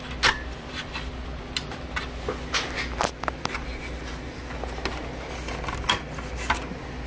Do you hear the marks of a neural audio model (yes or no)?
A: no